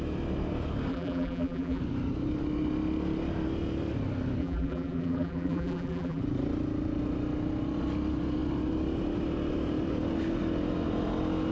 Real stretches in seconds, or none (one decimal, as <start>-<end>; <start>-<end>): 0.0-0.9; 1.8-4.4; 6.2-11.5